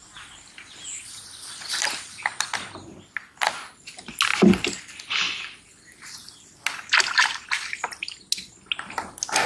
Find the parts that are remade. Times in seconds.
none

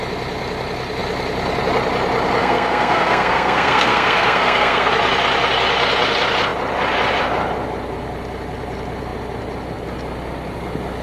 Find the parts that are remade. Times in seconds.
2.4-4.9 (codec, SNAC)

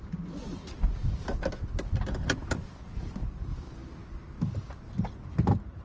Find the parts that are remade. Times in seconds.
none

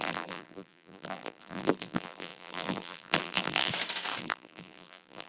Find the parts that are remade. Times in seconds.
0.0-3.7 (vocoder, BigVGAN v2); 4.2-5.3